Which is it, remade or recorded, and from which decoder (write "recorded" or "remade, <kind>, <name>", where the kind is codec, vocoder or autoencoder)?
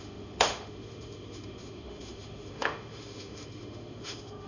remade, autoencoder, DAC-VAE